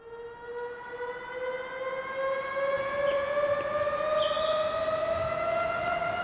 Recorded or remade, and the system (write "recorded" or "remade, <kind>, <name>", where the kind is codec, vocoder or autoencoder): recorded